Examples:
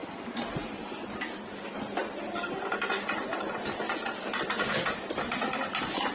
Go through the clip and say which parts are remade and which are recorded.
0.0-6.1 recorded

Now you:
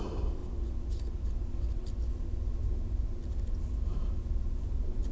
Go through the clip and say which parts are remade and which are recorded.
0.0-0.4 remade; 0.4-2.6 recorded; 2.6-5.1 remade

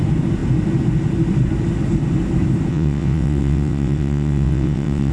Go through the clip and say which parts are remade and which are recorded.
0.0-2.7 recorded; 2.7-5.1 remade

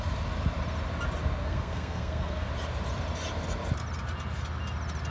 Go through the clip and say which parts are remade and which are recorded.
0.0-1.4 recorded; 1.4-2.5 remade; 2.5-5.1 recorded

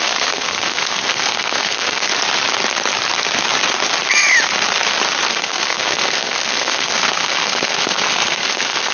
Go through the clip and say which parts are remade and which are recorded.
0.0-2.1 remade; 2.1-5.3 recorded; 5.3-8.9 remade

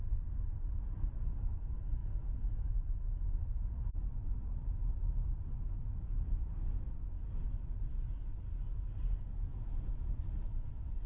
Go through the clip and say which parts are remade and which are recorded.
0.0-2.0 recorded; 2.0-2.7 remade; 2.7-5.8 recorded; 5.8-6.9 remade; 6.9-9.5 recorded; 9.5-10.2 remade; 10.2-11.1 recorded

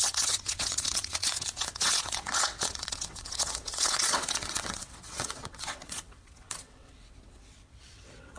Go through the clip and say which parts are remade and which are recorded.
0.0-8.4 remade

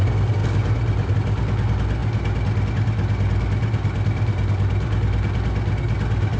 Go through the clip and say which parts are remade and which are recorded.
0.0-6.4 recorded